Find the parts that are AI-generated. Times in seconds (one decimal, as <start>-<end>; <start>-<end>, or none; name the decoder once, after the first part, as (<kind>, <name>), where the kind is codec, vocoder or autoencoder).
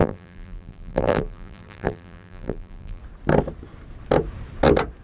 0.0-3.0 (vocoder, BigVGAN v2)